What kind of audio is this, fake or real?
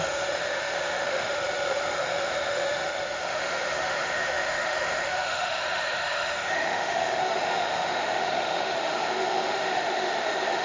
fake